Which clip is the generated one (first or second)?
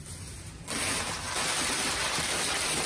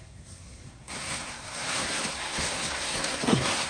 second